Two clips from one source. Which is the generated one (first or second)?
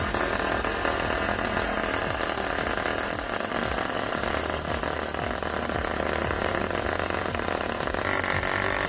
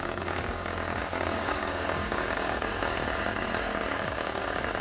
second